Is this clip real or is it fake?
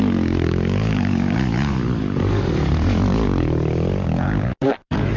fake